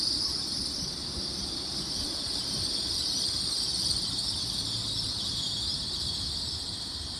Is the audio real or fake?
fake